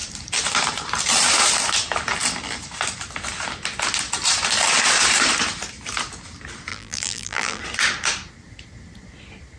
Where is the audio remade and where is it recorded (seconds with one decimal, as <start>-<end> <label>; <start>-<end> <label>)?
0.0-6.7 recorded; 6.7-7.6 remade; 7.6-9.6 recorded

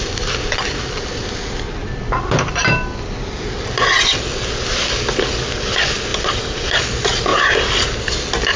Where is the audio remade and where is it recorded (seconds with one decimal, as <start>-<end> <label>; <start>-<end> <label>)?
0.0-6.1 recorded; 6.1-6.8 remade; 6.8-7.3 recorded; 7.3-8.0 remade; 8.0-8.6 recorded